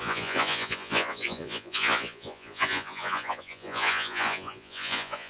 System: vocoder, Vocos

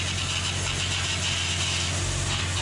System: none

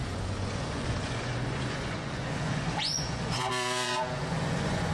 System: vocoder, Vocos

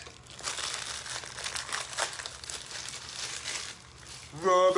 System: none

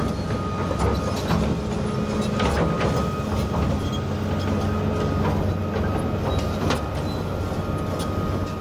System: none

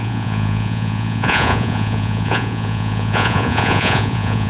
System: vocoder, Vocos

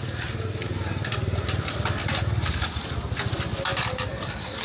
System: none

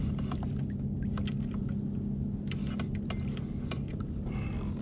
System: none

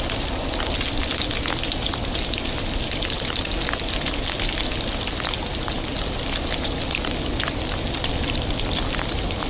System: none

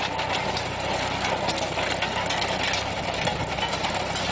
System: none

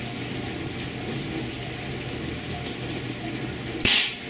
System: none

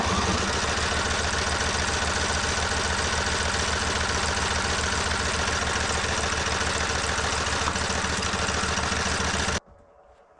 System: none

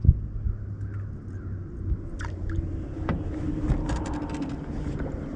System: none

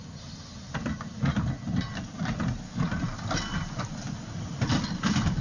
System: none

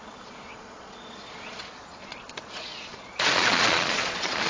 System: vocoder, Vocos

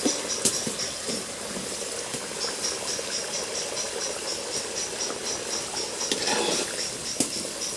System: none